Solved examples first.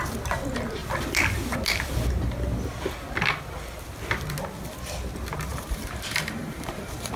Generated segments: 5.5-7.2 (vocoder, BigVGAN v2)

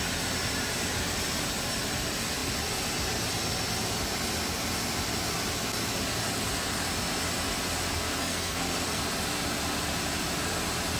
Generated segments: 8.2-9.0 (codec, SNAC)

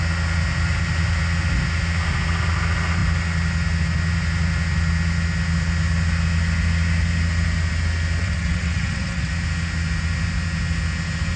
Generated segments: 8.2-9.3 (vocoder, WaveNeXt)